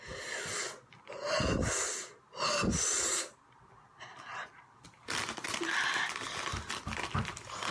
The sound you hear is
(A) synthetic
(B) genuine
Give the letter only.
B